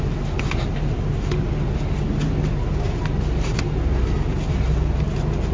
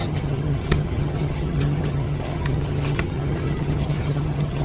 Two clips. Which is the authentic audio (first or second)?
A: first